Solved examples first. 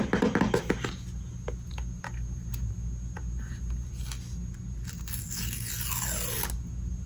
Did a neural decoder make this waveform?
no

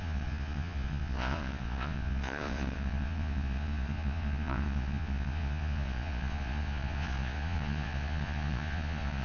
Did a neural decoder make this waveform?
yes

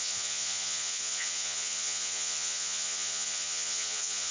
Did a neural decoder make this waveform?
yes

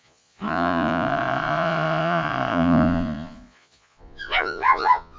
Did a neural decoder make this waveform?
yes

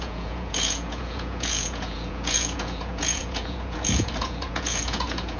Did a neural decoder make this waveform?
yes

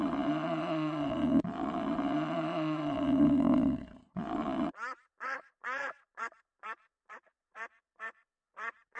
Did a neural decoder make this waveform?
yes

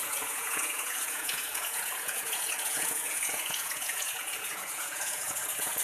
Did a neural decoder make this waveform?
yes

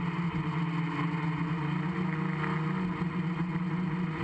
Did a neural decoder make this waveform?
no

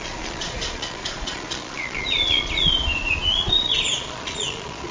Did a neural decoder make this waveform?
yes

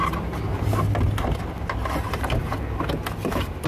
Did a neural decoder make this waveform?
no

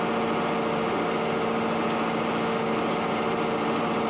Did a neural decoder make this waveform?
no